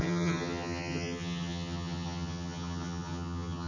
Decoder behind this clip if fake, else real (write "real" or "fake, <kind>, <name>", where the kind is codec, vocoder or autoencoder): fake, vocoder, HiFi-GAN